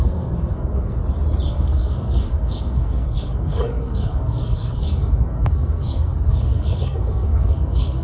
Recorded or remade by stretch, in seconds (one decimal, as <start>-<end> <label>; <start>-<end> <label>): 0.0-1.0 remade; 1.0-1.5 recorded; 1.5-8.0 remade